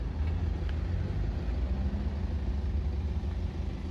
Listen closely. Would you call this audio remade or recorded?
recorded